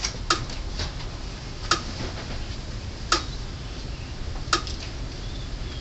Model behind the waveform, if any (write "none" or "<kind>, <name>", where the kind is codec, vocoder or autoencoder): none